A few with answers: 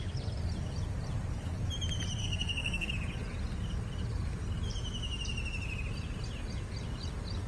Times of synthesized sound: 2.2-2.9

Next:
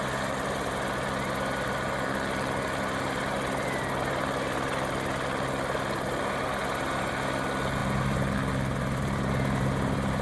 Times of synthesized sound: none

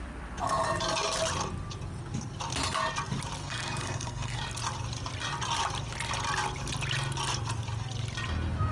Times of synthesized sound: 3.4-4.4